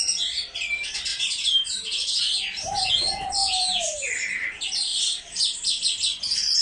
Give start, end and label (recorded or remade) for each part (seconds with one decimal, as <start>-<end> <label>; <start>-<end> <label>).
0.0-1.1 recorded; 1.1-2.9 remade; 2.9-3.4 recorded; 3.4-4.1 remade; 4.1-6.6 recorded